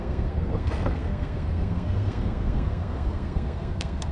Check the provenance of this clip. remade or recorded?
remade